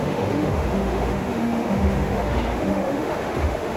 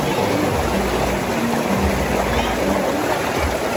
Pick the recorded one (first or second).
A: second